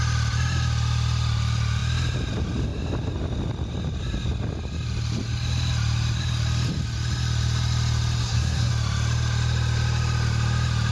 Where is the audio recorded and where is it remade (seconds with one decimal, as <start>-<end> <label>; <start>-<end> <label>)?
0.0-8.2 recorded; 8.2-8.7 remade; 8.7-10.9 recorded